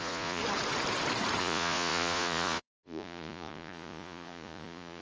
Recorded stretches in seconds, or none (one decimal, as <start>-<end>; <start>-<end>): 0.4-1.4